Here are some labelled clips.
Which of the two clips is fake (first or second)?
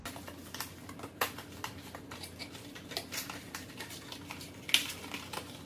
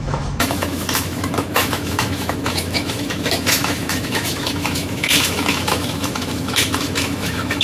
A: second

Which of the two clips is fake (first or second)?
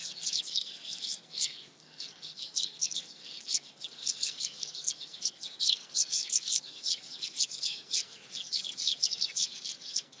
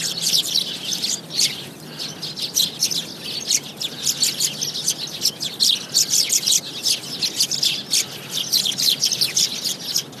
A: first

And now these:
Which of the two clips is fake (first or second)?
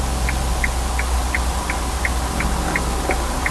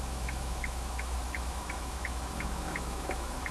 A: second